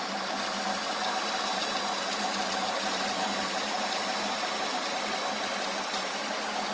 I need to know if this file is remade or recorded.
recorded